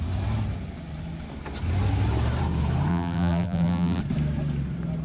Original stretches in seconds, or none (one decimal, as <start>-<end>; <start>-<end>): 0.0-2.9; 4.0-5.0

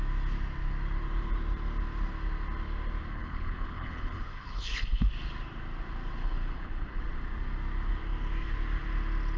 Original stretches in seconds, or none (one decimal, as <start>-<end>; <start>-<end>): 0.0-3.1; 5.1-6.2; 7.0-9.4